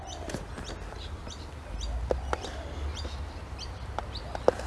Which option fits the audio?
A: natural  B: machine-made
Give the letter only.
A